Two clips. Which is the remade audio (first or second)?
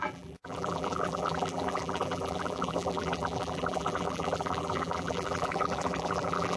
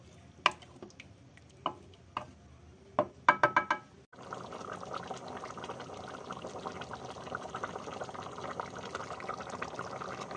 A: first